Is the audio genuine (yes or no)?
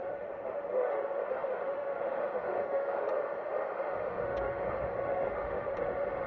no